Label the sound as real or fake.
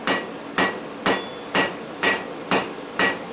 real